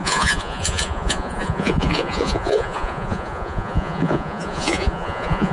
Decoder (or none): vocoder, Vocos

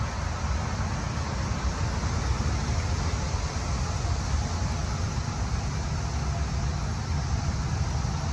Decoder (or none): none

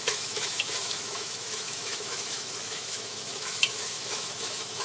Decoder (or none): autoencoder, DAC-VAE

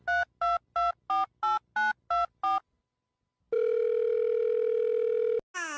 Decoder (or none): none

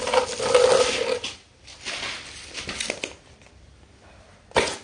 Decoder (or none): none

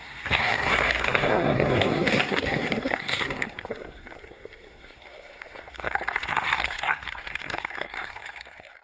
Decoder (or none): codec, SNAC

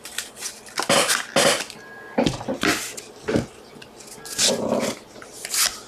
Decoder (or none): none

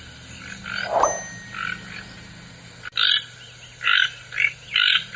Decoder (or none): none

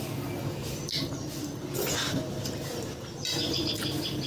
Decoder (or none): none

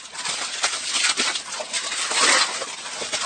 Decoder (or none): none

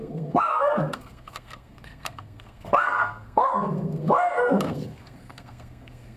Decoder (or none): codec, SNAC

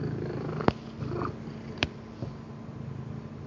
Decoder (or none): none